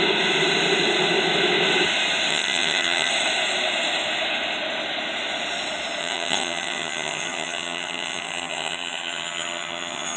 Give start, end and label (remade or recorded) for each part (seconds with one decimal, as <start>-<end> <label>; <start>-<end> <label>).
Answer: 0.0-2.3 recorded; 2.3-3.1 remade; 3.1-6.0 recorded; 6.0-10.2 remade